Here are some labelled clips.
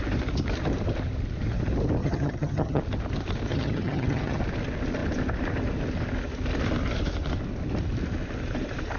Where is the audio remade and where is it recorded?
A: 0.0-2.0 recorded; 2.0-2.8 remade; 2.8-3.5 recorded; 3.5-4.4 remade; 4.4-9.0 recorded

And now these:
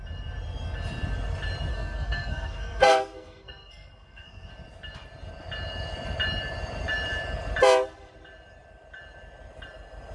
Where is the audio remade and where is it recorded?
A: 0.0-1.7 recorded; 1.7-4.5 remade; 4.5-10.1 recorded